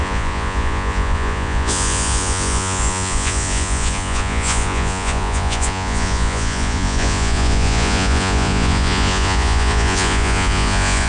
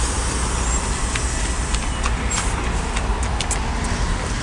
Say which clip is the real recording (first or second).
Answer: second